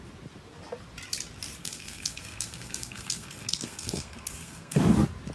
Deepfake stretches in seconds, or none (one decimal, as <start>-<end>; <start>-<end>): 1.6-4.8